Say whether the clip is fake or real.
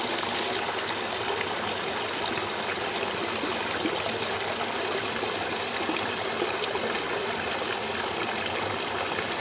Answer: real